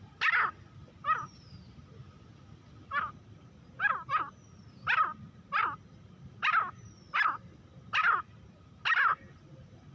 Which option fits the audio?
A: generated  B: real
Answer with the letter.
B